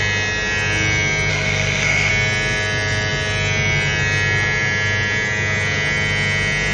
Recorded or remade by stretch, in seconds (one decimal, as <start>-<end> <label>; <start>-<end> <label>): 0.0-1.3 recorded; 1.3-2.1 remade; 2.1-6.7 recorded